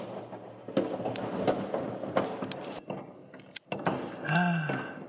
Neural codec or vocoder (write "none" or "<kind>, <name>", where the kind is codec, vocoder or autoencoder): none